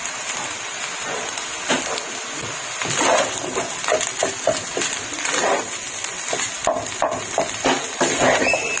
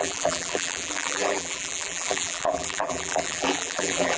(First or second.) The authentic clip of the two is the first